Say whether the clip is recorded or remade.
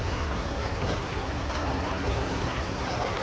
remade